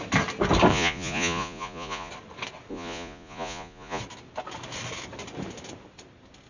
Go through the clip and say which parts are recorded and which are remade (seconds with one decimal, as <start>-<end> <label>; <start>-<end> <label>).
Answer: 0.0-0.7 recorded; 0.7-2.1 remade; 2.1-2.7 recorded; 2.7-4.0 remade; 4.0-6.5 recorded